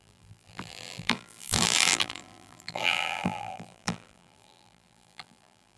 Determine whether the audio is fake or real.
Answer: fake